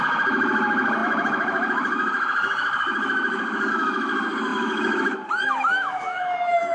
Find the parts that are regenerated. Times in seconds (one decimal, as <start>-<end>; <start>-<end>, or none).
0.0-6.7